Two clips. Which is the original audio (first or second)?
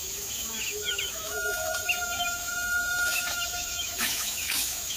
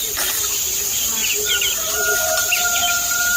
second